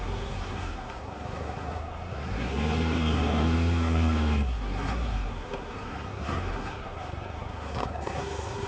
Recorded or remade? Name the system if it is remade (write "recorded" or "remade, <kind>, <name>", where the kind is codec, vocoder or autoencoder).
remade, codec, SNAC